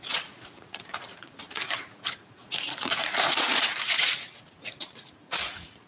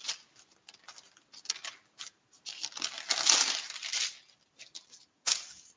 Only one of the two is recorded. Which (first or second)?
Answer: second